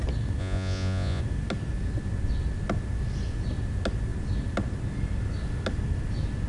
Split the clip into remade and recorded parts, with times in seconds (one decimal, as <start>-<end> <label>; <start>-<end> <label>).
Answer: 0.0-0.4 recorded; 0.4-1.2 remade; 1.2-6.5 recorded